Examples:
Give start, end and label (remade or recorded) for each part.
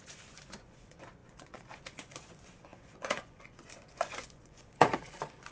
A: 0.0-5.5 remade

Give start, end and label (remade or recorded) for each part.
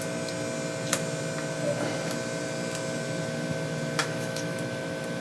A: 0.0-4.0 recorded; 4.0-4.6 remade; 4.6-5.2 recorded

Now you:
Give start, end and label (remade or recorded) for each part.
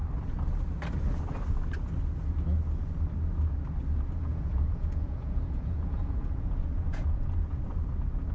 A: 0.0-4.3 recorded; 4.3-7.6 remade; 7.6-8.3 recorded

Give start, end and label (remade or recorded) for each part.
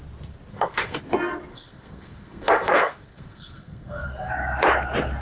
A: 0.0-0.5 recorded; 0.5-1.0 remade; 1.0-1.5 recorded; 1.5-4.3 remade; 4.3-5.2 recorded